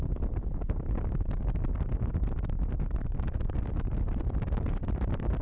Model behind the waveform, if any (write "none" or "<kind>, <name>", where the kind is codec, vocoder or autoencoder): none